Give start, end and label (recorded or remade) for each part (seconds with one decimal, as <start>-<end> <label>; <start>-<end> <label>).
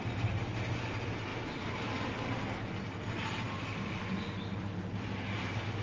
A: 0.0-5.8 recorded